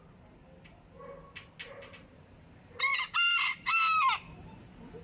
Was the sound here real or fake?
real